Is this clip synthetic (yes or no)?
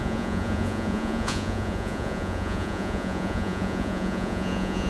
yes